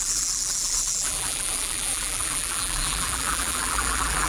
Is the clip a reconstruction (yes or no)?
yes